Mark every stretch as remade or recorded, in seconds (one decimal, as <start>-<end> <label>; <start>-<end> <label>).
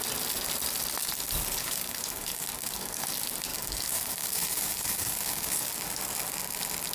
0.0-1.6 recorded; 1.6-3.0 remade; 3.0-3.5 recorded; 3.5-5.7 remade; 5.7-6.9 recorded